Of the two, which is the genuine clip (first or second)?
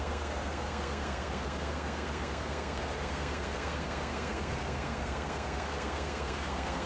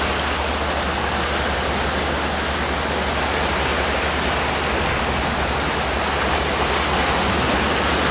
second